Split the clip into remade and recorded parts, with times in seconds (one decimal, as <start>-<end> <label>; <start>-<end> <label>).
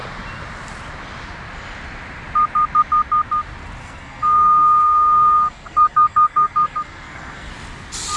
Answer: 0.0-3.8 recorded; 3.8-7.5 remade; 7.5-8.2 recorded